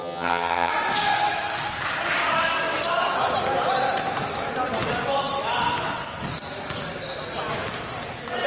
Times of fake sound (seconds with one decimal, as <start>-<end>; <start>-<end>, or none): 0.0-0.7